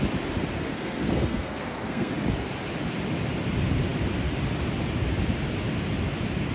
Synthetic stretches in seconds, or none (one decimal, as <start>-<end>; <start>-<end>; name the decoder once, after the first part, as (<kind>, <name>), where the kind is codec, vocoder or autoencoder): 0.7-2.1 (codec, SNAC)

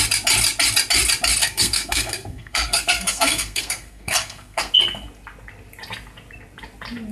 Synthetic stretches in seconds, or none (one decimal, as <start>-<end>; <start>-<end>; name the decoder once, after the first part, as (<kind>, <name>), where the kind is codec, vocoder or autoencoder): 1.4-4.7 (codec, SNAC)

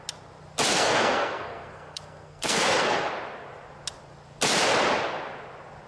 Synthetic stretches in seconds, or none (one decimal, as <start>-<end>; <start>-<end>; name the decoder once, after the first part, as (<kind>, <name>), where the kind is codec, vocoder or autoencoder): 0.7-3.1 (codec, SNAC)

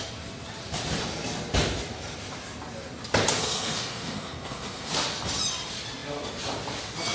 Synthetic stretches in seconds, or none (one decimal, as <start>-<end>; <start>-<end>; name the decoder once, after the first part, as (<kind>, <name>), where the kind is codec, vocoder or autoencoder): 3.4-4.9 (codec, SNAC)

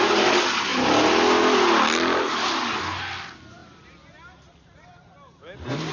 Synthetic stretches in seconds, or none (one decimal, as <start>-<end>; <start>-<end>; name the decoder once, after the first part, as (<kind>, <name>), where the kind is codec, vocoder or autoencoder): none

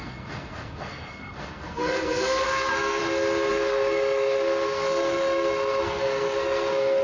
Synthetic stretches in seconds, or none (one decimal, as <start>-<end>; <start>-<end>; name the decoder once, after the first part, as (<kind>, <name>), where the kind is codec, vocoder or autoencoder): 0.0-3.0 (codec, SNAC); 3.5-7.0

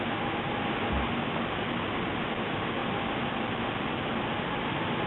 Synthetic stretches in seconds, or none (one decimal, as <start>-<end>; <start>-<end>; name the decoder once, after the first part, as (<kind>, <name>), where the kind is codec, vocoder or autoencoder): none

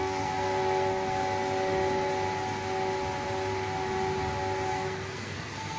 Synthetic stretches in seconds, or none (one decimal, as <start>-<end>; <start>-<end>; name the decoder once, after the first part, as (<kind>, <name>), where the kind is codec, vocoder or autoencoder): 0.0-1.2 (codec, SNAC); 4.7-5.8